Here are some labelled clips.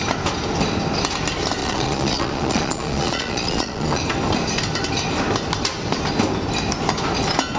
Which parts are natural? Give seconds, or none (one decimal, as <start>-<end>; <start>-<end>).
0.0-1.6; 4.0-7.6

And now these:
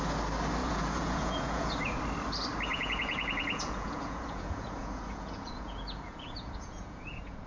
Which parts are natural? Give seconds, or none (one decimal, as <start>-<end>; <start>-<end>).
0.0-0.6; 2.0-2.7

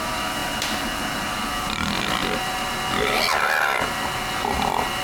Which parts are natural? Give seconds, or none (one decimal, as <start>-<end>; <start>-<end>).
0.0-5.0

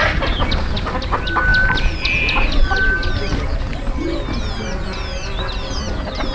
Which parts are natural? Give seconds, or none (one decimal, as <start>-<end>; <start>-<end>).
0.0-6.3